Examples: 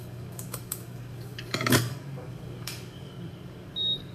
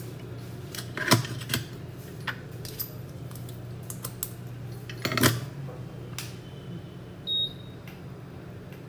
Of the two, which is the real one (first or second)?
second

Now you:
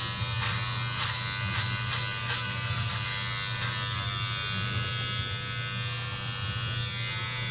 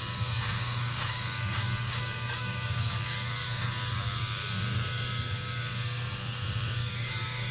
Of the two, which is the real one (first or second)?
first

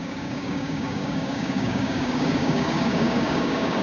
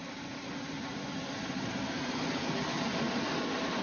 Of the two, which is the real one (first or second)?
second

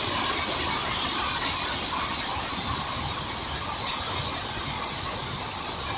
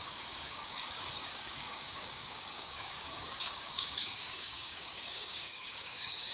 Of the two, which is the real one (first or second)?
first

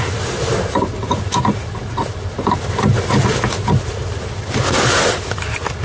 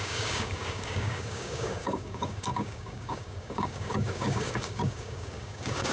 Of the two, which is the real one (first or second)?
first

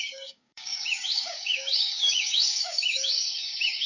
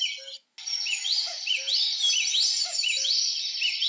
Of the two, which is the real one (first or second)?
second